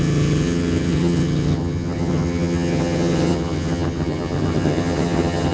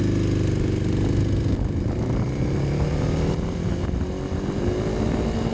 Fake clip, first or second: first